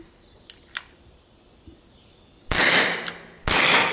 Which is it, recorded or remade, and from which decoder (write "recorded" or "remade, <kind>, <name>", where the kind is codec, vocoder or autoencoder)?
recorded